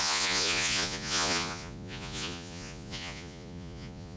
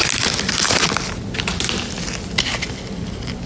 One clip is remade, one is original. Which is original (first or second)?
second